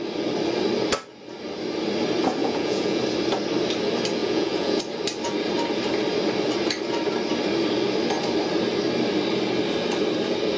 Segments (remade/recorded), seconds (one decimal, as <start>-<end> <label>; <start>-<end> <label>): 0.0-2.4 recorded; 2.4-3.0 remade; 3.0-4.2 recorded; 4.2-4.8 remade; 4.8-10.6 recorded